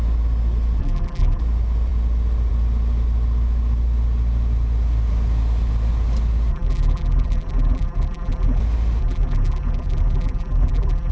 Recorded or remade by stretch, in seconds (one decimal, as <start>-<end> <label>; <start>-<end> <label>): 0.0-0.8 recorded; 0.8-1.4 remade; 1.4-6.5 recorded; 6.5-8.6 remade; 8.6-9.0 recorded; 9.0-11.1 remade